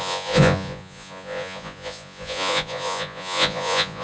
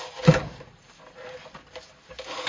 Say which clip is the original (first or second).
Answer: second